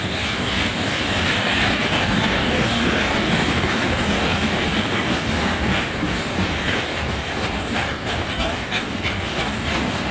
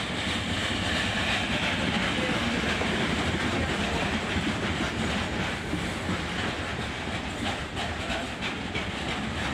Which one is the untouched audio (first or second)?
second